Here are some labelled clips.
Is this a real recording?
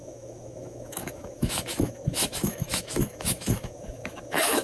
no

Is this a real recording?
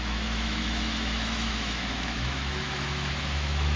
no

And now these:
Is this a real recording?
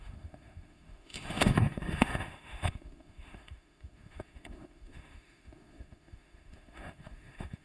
no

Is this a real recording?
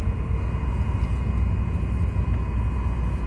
yes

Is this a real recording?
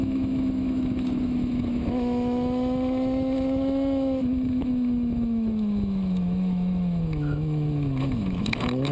no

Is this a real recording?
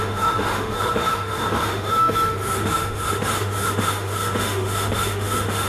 no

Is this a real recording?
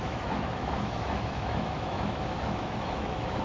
no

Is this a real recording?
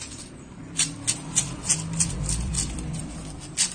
yes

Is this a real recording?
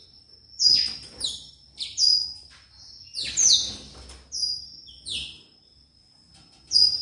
yes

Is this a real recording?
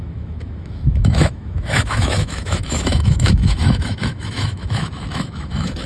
no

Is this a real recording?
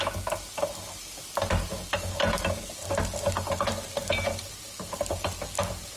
yes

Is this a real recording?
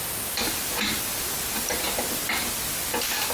yes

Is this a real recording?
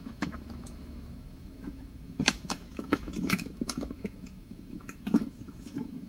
no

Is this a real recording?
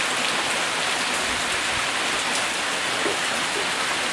yes